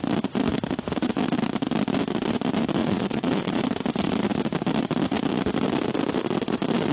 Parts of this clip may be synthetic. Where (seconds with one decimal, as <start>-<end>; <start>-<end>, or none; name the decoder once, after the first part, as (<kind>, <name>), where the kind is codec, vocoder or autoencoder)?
2.8-3.6 (vocoder, Vocos)